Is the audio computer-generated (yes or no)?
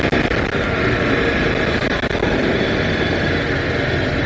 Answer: no